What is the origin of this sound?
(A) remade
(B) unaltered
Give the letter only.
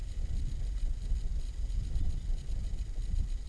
B